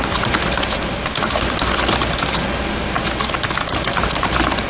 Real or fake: real